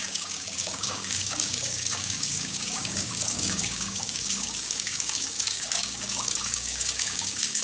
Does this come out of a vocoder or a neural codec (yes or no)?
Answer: yes